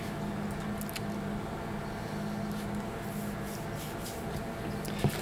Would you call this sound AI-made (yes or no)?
no